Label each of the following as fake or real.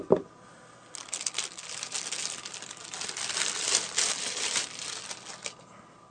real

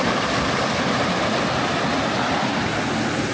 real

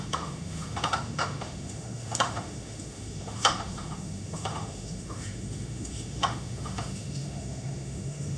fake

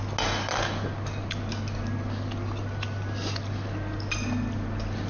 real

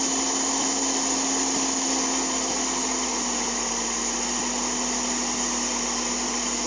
real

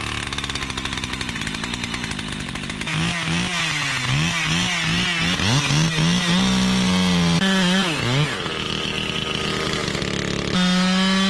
real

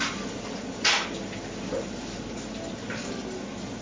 real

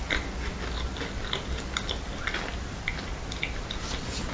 real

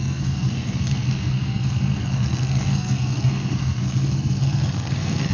fake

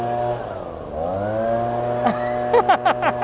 real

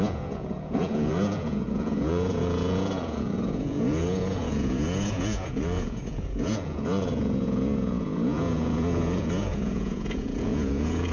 fake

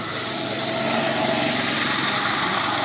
real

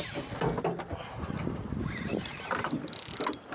real